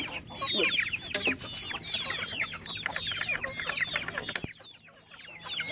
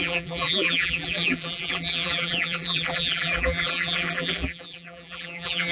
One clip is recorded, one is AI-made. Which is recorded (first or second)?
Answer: first